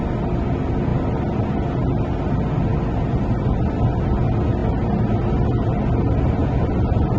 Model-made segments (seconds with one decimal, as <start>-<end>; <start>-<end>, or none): none